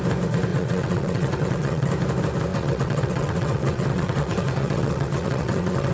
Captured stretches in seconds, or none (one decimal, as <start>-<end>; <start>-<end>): 0.0-0.5; 1.9-2.5